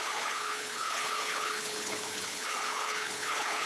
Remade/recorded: remade